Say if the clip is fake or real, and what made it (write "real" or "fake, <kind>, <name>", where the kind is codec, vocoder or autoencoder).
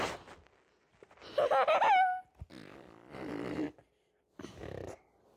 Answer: real